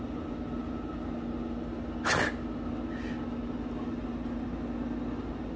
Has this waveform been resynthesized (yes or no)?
no